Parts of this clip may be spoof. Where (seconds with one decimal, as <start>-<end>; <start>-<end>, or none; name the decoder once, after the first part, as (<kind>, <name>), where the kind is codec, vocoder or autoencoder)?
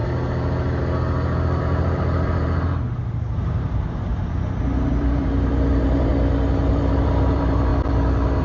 1.6-6.1 (vocoder, BigVGAN v2); 6.7-7.7